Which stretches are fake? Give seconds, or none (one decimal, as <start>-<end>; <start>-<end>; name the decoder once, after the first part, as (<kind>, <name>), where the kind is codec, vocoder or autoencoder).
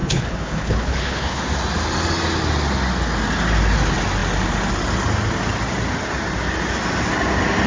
0.0-1.4 (codec, HILCodec)